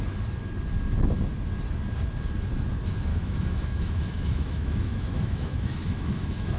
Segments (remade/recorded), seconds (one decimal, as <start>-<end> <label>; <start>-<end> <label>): 0.0-3.1 recorded; 3.1-6.6 remade

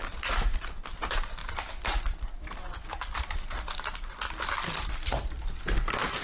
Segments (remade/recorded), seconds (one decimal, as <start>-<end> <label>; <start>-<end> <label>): 0.0-6.2 recorded

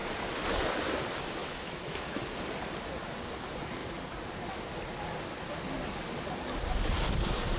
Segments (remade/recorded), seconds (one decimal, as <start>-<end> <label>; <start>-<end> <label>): 0.0-1.4 recorded; 1.4-2.2 remade; 2.2-7.6 recorded

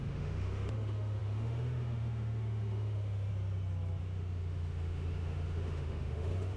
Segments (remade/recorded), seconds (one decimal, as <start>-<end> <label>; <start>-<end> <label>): 0.0-3.3 remade; 3.3-4.0 recorded; 4.0-6.6 remade

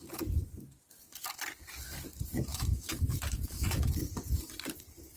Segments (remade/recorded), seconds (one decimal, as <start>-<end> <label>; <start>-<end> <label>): 0.0-2.5 recorded; 2.5-3.9 remade; 3.9-5.2 recorded